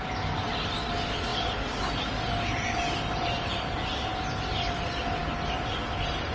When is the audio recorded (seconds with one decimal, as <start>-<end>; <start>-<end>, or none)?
0.0-6.3